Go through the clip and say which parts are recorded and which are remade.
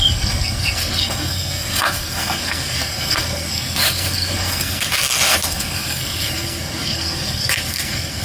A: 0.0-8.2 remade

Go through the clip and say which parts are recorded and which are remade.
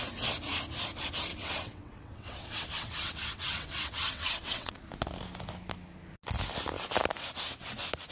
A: 0.0-1.3 recorded; 1.3-4.8 remade; 4.8-8.1 recorded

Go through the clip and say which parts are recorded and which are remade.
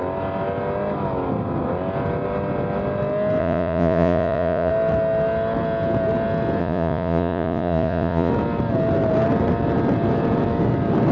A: 0.0-3.4 recorded; 3.4-4.7 remade; 4.7-6.6 recorded; 6.6-8.3 remade; 8.3-11.1 recorded